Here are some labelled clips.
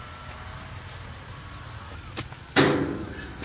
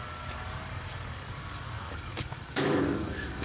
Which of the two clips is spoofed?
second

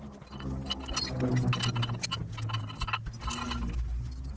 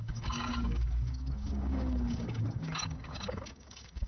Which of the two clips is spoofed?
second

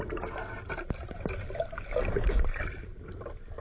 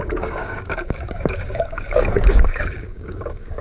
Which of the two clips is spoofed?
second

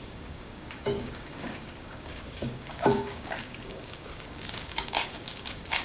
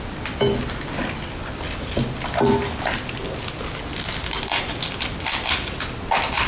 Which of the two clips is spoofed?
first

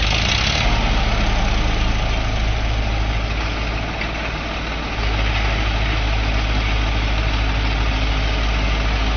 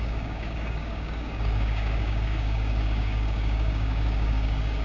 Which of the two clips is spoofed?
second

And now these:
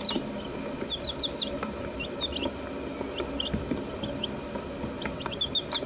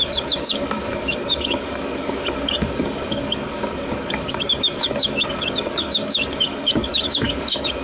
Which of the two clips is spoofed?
second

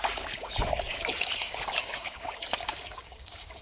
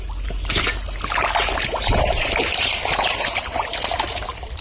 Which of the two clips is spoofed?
first